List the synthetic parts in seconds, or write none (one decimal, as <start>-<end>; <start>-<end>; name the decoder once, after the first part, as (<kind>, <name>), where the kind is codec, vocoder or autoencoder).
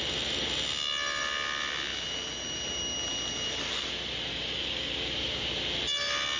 4.3-5.1 (codec, DAC)